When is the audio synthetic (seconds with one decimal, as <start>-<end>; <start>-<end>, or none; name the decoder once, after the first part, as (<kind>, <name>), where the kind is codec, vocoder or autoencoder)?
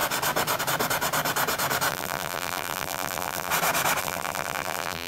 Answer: 1.9-3.5 (vocoder, BigVGAN v2); 4.0-5.1